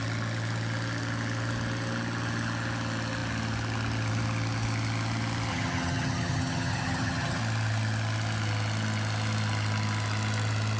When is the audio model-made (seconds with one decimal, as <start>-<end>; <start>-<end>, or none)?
5.5-7.4